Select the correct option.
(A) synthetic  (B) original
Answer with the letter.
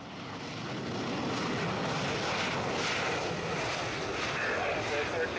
B